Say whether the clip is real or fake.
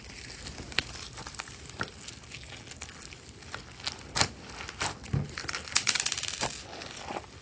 real